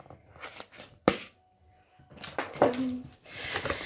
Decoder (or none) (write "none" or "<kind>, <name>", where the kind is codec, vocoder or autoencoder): none